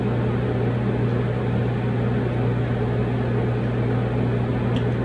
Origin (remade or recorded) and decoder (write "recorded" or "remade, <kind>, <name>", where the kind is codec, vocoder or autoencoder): recorded